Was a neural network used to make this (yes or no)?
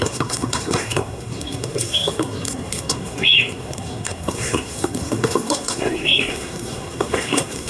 yes